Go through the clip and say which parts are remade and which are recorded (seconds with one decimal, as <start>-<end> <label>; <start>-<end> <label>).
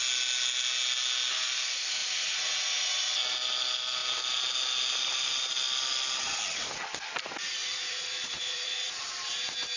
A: 0.0-2.0 recorded; 2.0-3.2 remade; 3.2-7.6 recorded; 7.6-9.1 remade; 9.1-9.8 recorded